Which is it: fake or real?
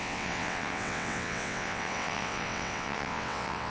fake